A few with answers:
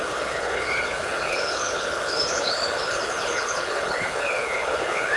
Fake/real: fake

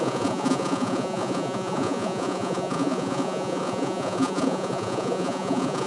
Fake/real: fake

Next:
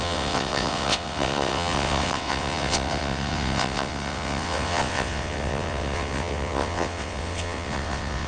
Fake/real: fake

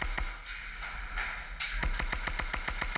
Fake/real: real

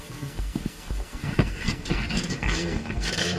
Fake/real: fake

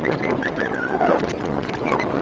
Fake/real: fake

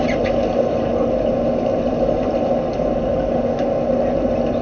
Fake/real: real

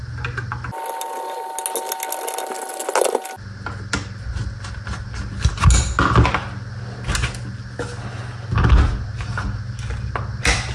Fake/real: real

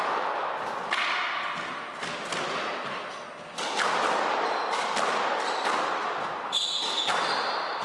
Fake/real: real